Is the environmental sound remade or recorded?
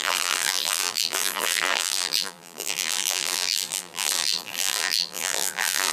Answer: remade